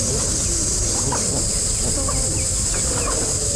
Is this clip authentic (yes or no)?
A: yes